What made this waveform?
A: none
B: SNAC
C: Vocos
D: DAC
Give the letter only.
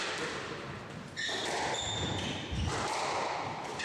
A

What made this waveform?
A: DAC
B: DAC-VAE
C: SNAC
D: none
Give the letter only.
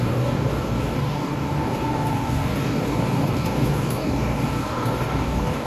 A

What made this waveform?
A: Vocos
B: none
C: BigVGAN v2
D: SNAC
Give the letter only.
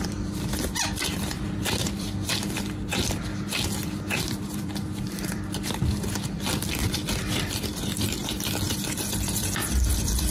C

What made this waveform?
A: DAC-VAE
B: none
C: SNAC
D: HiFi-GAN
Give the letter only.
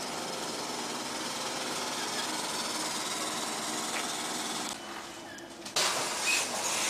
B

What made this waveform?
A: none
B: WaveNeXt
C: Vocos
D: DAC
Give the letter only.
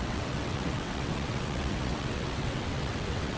B